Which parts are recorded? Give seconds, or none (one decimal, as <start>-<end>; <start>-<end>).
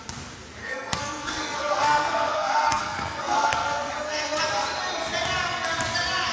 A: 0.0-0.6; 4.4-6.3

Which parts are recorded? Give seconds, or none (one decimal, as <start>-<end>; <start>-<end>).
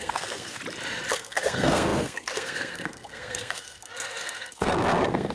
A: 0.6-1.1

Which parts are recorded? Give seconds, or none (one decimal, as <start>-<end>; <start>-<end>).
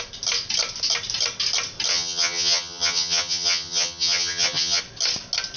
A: 0.0-1.9; 4.8-5.6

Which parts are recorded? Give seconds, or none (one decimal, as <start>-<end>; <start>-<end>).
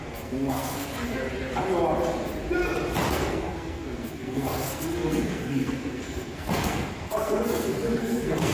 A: 1.2-3.1